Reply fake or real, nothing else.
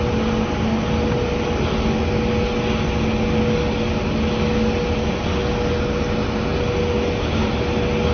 real